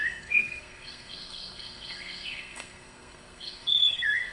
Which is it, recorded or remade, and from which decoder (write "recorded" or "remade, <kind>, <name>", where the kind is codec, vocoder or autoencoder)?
remade, codec, SNAC